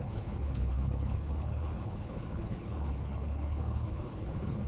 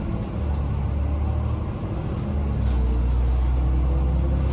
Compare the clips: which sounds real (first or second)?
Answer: second